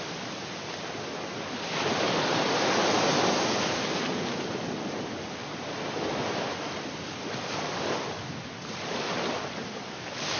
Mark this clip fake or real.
real